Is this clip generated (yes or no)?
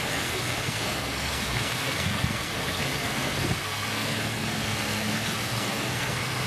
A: yes